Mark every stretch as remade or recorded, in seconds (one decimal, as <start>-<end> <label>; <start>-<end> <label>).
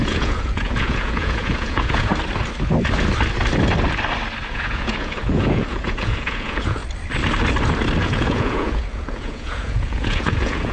0.0-2.1 remade; 2.1-4.5 recorded; 4.5-6.8 remade; 6.8-8.0 recorded; 8.0-10.7 remade